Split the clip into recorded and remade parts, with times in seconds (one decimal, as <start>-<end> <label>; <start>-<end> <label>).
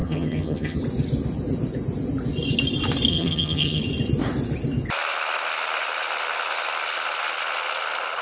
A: 0.0-0.8 remade; 0.8-3.1 recorded; 3.1-3.8 remade; 3.8-8.2 recorded